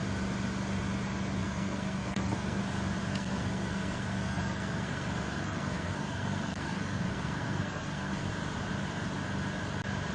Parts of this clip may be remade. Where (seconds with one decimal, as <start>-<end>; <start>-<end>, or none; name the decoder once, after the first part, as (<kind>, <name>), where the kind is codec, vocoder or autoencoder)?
1.4-2.6 (codec, SNAC); 3.1-8.3